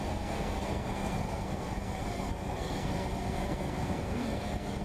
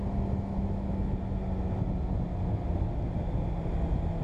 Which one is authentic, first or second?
second